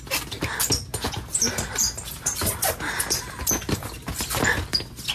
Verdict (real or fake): real